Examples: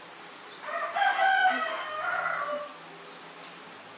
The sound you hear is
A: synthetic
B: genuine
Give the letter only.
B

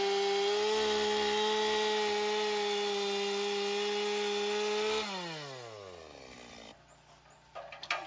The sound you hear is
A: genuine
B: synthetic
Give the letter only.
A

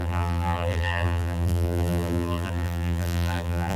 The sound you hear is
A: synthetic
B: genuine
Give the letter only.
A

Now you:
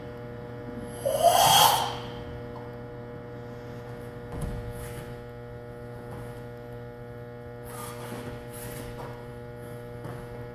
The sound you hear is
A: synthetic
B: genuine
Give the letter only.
B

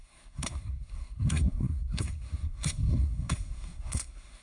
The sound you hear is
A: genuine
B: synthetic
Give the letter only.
B